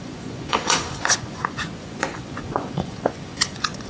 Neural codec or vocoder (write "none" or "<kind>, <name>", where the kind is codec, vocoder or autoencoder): vocoder, Vocos